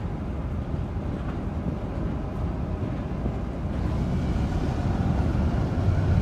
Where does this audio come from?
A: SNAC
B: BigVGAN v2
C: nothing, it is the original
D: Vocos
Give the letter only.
C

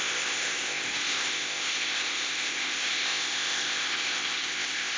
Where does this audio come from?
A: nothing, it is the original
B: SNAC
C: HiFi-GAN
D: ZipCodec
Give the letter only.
D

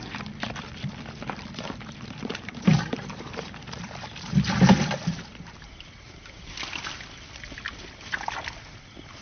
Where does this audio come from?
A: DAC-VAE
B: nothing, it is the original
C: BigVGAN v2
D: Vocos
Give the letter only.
C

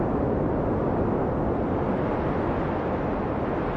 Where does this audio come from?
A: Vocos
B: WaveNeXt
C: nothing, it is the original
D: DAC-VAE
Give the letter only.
C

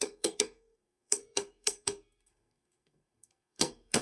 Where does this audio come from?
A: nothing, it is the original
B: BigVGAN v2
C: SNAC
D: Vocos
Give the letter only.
C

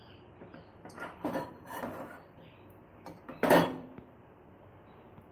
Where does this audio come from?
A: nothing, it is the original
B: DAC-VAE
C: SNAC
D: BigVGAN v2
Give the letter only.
D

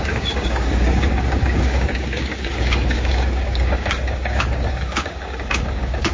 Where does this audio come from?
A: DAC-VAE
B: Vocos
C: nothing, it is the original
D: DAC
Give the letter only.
D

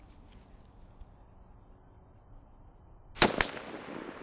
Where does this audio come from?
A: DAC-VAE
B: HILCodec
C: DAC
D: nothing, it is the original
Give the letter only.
D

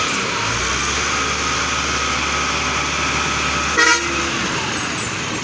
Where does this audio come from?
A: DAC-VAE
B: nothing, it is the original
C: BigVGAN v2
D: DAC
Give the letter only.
B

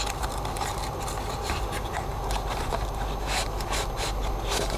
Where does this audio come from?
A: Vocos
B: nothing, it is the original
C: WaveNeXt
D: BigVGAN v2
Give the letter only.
B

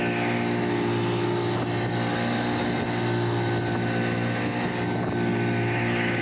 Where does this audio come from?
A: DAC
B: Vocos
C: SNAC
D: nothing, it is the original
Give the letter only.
D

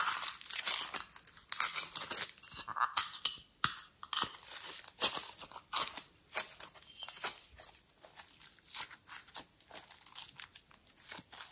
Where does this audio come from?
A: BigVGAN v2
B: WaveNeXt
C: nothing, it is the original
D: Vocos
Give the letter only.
C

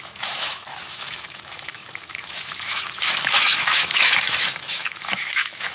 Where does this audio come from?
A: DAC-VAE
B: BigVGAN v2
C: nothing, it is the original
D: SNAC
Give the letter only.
A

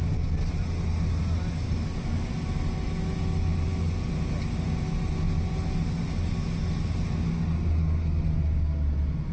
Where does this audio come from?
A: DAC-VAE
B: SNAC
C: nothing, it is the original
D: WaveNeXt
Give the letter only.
C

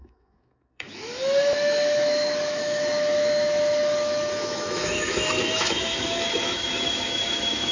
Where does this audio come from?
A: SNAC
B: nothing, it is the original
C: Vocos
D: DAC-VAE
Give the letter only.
D